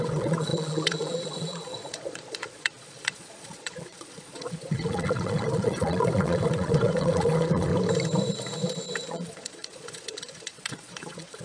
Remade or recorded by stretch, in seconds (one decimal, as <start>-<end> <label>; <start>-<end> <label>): 0.0-7.7 remade; 7.7-9.1 recorded; 9.1-11.4 remade